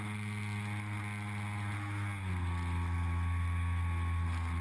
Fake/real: real